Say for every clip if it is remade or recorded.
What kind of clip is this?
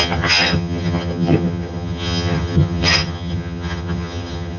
remade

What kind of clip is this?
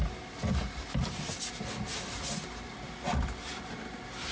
recorded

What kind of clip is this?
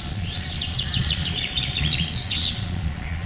remade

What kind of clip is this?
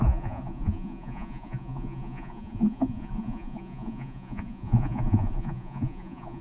remade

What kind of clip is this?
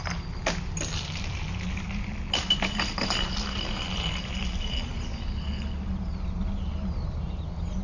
recorded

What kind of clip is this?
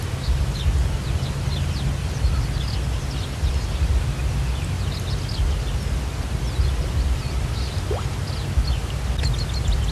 recorded